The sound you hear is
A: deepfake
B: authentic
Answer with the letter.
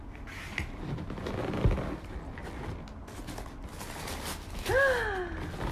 B